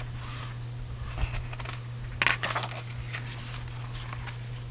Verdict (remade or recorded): recorded